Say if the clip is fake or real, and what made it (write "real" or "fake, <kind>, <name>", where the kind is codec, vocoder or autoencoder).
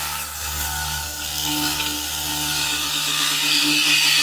fake, codec, DAC